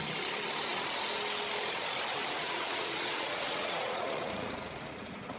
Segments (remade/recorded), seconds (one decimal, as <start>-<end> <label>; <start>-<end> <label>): 0.0-2.2 recorded; 2.2-5.4 remade